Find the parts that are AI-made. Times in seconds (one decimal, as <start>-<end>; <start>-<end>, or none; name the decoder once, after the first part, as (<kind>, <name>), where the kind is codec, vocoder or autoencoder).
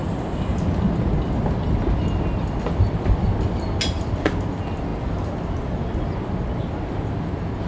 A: none